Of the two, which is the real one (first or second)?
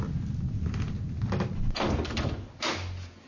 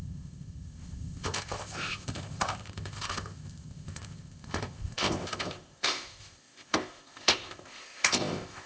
first